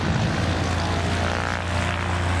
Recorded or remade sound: recorded